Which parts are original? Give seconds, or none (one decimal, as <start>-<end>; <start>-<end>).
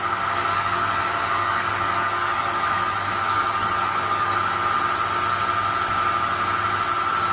0.0-0.5; 4.6-7.3